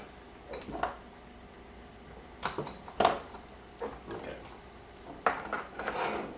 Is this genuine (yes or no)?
yes